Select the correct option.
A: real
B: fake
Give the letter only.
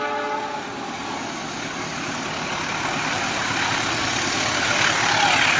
A